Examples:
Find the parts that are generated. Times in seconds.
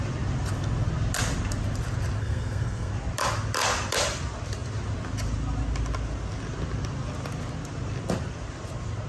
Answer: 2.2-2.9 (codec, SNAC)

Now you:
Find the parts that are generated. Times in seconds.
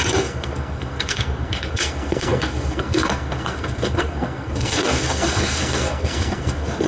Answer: 0.0-6.9 (codec, SNAC)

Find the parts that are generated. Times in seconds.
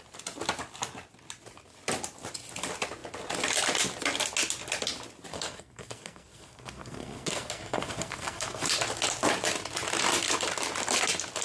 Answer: 5.3-8.6 (codec, SNAC)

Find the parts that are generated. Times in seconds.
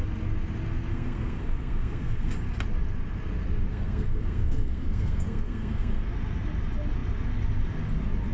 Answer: 0.9-2.3 (codec, SNAC); 3.7-6.0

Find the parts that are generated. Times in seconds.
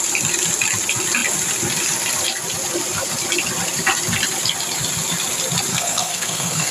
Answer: 5.7-6.7 (codec, SNAC)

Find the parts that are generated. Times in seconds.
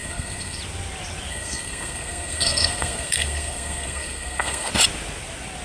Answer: 0.0-0.6 (codec, SNAC); 1.3-4.7